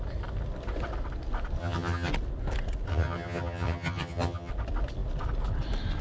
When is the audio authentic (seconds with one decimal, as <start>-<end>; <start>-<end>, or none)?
0.0-1.6; 2.1-2.9; 4.5-6.0